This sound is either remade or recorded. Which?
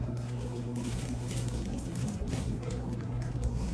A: remade